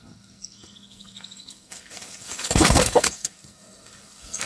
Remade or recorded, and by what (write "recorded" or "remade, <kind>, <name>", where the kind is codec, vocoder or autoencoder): remade, codec, SNAC